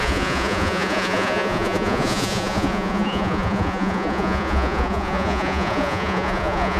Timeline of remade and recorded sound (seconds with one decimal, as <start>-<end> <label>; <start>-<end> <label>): 0.0-6.8 remade